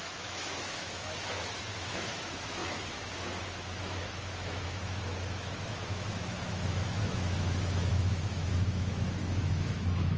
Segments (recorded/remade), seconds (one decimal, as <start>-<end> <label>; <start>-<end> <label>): 0.0-10.2 remade